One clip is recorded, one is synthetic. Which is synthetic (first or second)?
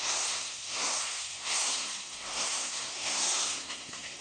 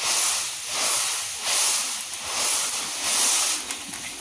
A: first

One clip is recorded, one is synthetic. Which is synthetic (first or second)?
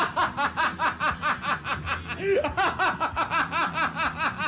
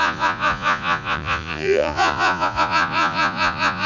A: second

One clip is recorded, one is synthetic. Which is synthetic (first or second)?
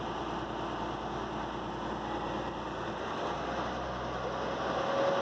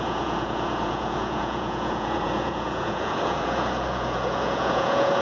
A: second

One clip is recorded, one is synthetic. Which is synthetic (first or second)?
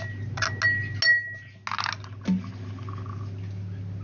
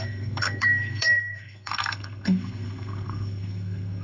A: second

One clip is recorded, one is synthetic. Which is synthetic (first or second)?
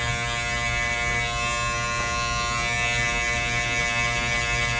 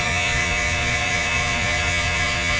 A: second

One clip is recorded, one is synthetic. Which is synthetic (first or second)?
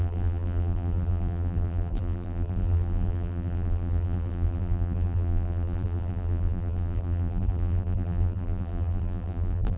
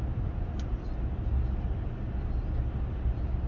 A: first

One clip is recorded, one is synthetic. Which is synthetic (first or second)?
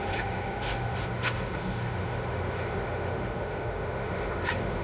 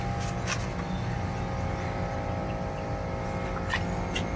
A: first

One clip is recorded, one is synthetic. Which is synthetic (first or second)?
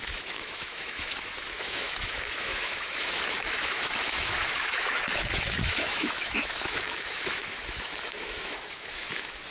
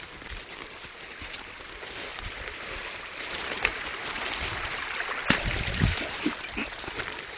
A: first